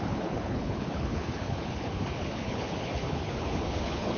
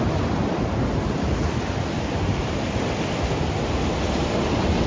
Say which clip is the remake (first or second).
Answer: first